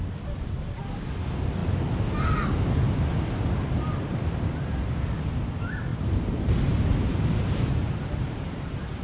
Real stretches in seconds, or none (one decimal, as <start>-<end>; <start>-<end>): 0.0-5.9